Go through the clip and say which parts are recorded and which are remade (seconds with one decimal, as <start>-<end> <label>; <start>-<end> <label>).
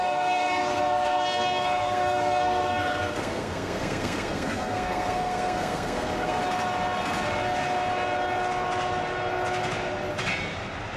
0.0-6.4 remade; 6.4-11.0 recorded